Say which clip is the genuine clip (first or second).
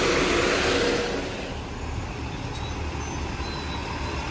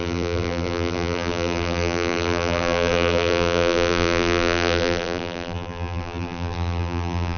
first